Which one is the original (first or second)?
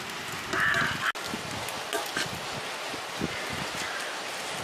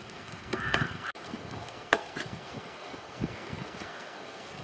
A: first